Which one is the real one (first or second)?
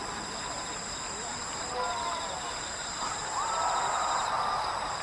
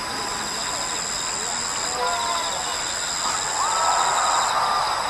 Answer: second